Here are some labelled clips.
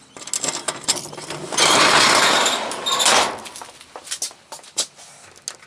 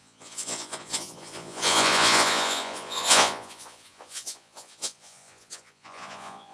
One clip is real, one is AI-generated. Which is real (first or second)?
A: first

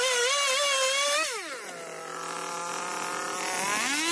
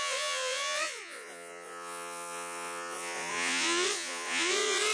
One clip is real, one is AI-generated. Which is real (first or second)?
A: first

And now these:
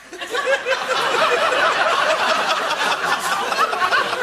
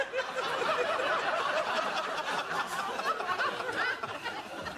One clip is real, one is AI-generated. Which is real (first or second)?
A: second